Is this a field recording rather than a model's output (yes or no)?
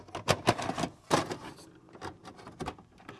yes